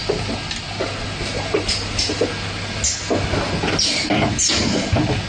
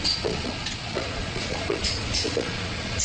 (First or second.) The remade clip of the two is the second